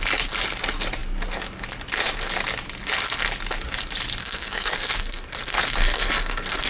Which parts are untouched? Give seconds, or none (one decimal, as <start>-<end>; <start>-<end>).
0.0-4.2